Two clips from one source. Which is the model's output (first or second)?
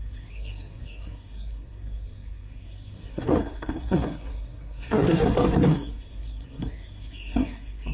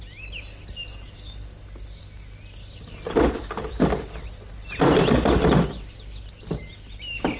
first